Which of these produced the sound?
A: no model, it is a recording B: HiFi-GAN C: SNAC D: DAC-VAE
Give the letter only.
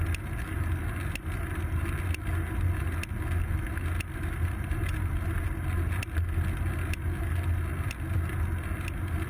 A